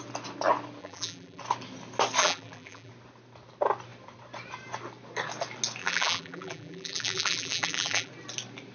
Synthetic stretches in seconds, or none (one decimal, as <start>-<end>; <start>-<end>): 0.8-1.4; 2.2-2.9; 5.8-8.1